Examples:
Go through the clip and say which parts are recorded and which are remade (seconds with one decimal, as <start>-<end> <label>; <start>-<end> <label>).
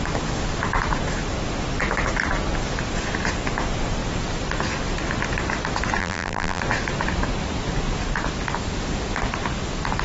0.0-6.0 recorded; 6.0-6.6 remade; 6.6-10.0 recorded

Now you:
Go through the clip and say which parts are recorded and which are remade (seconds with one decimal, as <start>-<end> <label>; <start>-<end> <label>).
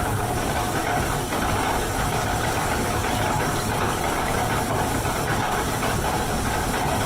0.0-0.8 remade; 0.8-2.1 recorded; 2.1-3.0 remade; 3.0-3.5 recorded; 3.5-7.1 remade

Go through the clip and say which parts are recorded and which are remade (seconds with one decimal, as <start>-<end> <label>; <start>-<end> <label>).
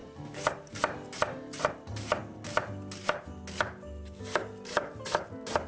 0.0-2.2 remade; 2.2-4.7 recorded; 4.7-5.7 remade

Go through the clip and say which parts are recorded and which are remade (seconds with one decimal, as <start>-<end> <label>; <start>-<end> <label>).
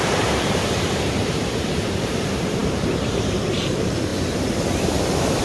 0.0-5.4 remade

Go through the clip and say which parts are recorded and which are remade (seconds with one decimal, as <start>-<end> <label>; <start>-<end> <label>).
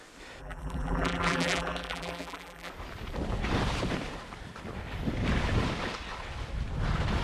0.0-0.4 recorded; 0.4-2.7 remade; 2.7-7.2 recorded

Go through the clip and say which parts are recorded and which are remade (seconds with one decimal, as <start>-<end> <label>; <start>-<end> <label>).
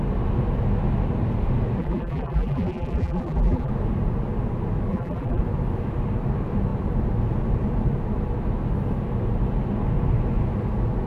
0.0-1.8 recorded; 1.8-3.7 remade; 3.7-4.9 recorded; 4.9-5.4 remade; 5.4-11.1 recorded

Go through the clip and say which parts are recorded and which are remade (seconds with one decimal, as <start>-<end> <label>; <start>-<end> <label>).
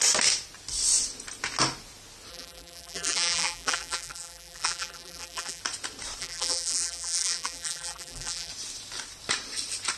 0.0-2.3 recorded; 2.3-5.6 remade; 5.6-6.2 recorded; 6.2-8.5 remade; 8.5-10.0 recorded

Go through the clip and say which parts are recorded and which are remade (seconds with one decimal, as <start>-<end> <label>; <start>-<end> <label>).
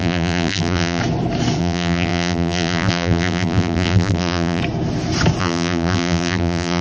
0.0-1.0 remade; 1.0-1.6 recorded; 1.6-4.6 remade; 4.6-5.4 recorded; 5.4-6.8 remade